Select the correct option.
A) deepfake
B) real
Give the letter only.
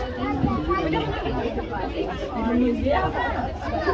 B